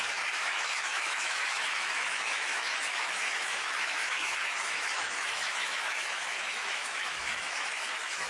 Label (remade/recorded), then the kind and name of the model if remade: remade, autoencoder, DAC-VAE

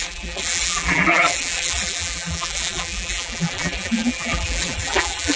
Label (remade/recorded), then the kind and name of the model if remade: remade, vocoder, BigVGAN v2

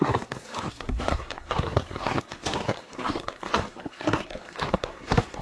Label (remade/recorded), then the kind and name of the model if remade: remade, codec, SNAC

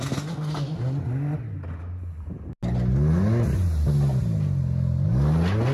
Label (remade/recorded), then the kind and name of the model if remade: recorded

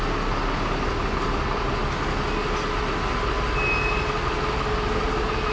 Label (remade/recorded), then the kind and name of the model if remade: recorded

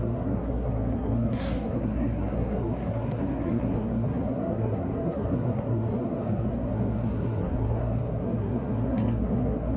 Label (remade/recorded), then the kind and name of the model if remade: remade, codec, SNAC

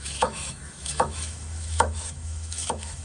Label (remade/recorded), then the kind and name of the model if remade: remade, autoencoder, DAC-VAE